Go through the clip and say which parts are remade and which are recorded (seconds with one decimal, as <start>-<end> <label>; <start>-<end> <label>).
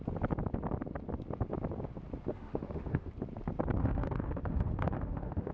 0.0-2.3 recorded; 2.3-3.1 remade; 3.1-3.8 recorded; 3.8-5.5 remade